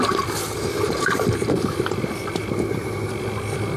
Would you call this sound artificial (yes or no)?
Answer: no